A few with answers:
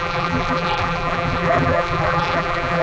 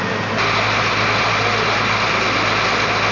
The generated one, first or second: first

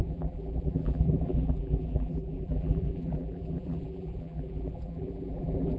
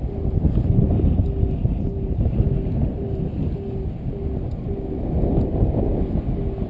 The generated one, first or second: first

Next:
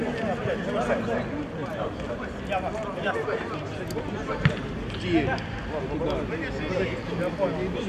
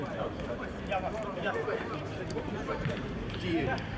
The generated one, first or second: second